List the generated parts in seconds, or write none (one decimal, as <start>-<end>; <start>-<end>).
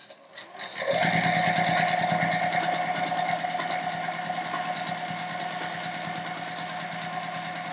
none